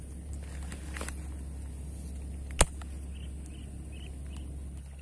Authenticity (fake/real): real